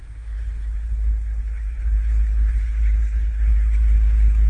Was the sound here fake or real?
fake